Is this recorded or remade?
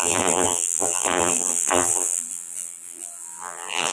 remade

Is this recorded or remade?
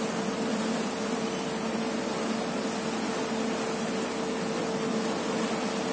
recorded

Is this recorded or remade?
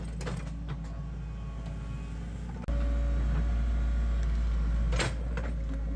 recorded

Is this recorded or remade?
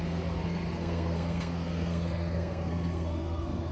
remade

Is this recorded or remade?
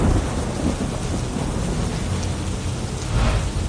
recorded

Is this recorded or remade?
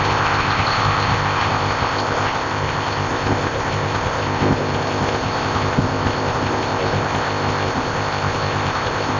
remade